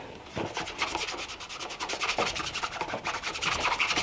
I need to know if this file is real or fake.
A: fake